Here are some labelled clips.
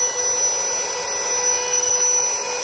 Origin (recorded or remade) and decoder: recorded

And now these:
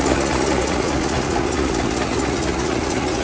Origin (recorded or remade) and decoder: remade, vocoder, Vocos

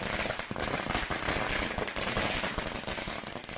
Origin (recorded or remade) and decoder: recorded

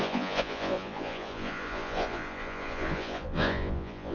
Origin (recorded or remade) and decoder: remade, vocoder, Vocos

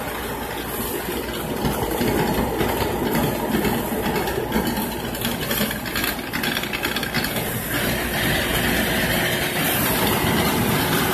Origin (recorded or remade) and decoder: recorded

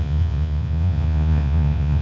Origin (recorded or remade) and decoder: remade, vocoder, Vocos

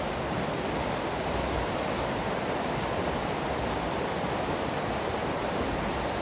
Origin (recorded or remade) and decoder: recorded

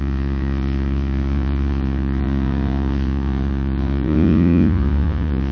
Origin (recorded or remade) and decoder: remade, vocoder, Vocos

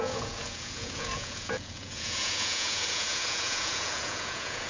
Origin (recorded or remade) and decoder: remade, vocoder, Vocos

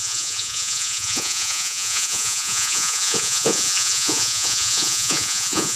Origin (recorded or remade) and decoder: remade, vocoder, Vocos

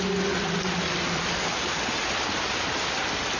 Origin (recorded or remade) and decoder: recorded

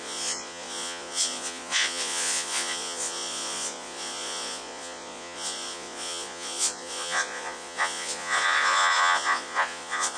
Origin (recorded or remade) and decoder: remade, vocoder, Vocos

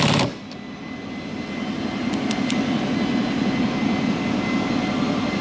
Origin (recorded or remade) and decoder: recorded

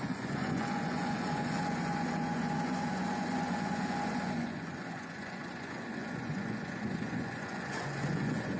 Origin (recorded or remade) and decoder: remade, vocoder, Vocos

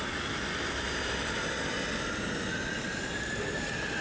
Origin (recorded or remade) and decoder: recorded